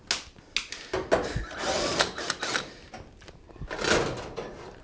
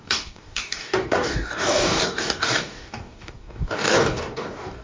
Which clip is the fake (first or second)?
second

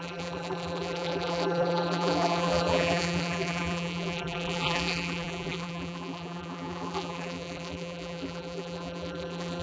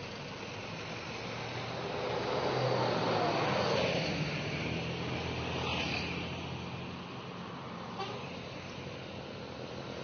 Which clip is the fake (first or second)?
first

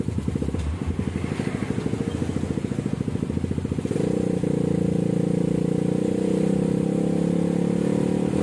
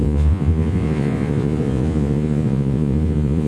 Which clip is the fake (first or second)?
second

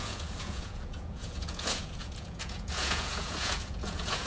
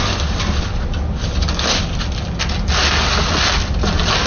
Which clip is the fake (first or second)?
first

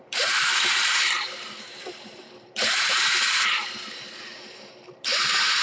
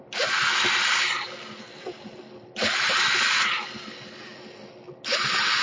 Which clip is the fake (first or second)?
first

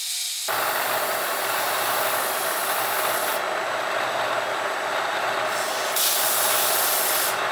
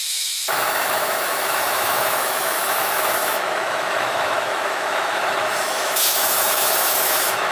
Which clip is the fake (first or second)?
second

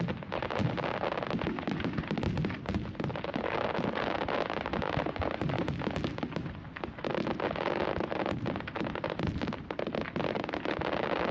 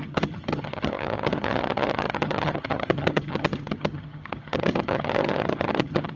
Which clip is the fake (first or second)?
second